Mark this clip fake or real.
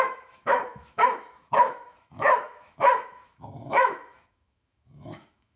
fake